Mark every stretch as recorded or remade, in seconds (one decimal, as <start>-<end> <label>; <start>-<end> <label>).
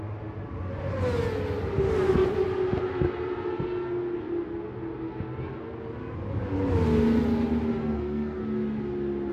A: 0.0-7.8 recorded; 7.8-8.4 remade; 8.4-9.3 recorded